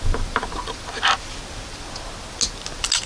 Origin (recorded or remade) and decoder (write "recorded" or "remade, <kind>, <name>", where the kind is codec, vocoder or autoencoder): recorded